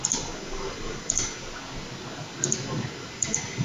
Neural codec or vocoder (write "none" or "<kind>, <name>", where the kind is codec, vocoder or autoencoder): none